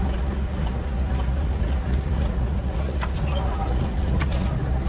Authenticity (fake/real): fake